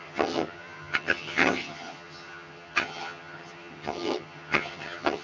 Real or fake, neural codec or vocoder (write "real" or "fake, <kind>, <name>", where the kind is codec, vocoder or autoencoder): fake, vocoder, HiFi-GAN